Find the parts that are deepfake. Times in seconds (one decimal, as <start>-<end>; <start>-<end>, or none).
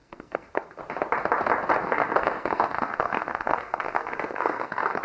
0.0-0.8; 1.8-5.0